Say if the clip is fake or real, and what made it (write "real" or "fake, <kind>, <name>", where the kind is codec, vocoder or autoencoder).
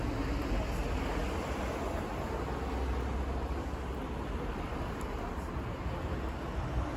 real